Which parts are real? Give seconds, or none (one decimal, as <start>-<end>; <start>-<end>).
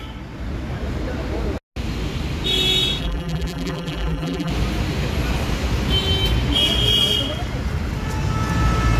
0.0-3.0; 4.5-9.0